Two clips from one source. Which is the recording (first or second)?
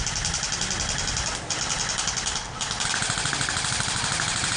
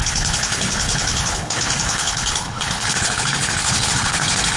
first